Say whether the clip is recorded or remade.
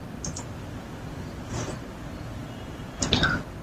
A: remade